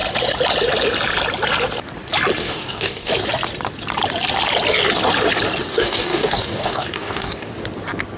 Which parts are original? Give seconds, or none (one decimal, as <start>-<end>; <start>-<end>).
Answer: 0.0-2.4; 3.1-5.7; 7.5-8.2